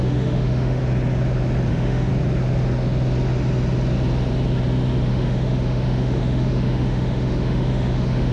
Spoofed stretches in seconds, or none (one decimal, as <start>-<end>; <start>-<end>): 0.0-0.8; 1.7-2.1; 5.1-8.3